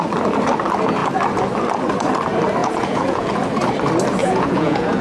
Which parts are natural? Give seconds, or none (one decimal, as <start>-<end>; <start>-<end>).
0.0-2.6; 3.3-4.2